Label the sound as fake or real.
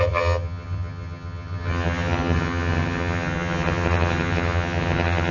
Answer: fake